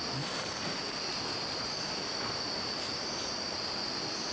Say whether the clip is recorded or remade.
recorded